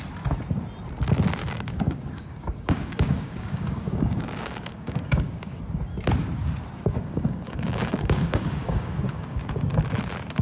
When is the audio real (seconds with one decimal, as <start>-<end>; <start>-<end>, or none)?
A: 0.0-1.4; 5.6-6.9; 9.5-10.4